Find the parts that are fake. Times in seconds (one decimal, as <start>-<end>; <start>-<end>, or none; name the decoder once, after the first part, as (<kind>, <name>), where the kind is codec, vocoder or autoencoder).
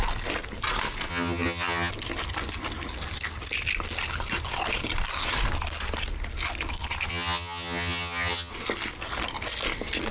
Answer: 1.1-1.9 (vocoder, HiFi-GAN); 7.1-8.5